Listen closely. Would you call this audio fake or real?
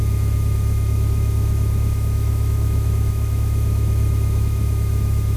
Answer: fake